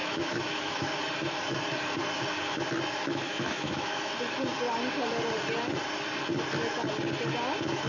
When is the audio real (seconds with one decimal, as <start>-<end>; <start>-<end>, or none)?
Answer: 1.0-3.0; 4.1-7.9